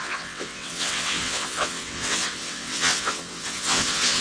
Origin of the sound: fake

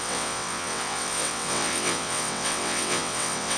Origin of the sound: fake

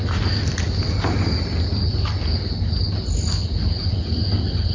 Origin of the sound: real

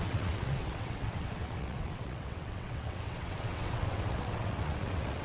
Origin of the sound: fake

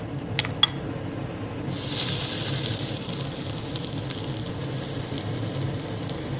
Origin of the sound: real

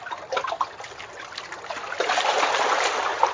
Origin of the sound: real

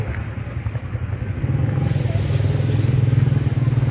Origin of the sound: real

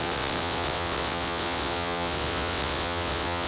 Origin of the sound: fake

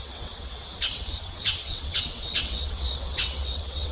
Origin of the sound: fake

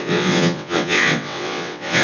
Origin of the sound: fake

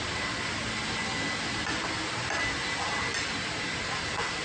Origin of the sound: real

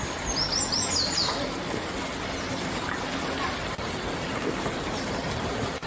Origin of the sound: real